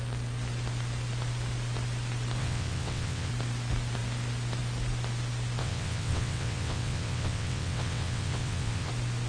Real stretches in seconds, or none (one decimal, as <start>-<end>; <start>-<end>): 0.0-2.4; 3.3-5.6; 8.9-9.3